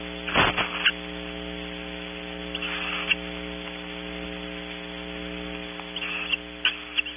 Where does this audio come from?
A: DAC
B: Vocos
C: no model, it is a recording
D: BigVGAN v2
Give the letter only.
C